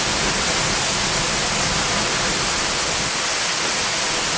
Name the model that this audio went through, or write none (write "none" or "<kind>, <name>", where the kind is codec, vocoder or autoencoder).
none